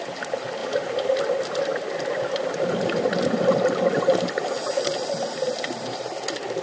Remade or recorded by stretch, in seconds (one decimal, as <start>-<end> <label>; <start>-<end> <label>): 0.0-6.6 recorded